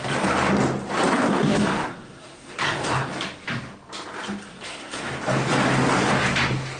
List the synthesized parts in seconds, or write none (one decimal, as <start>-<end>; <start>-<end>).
1.3-3.1; 4.5-5.1